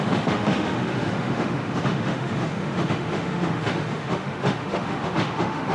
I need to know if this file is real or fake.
fake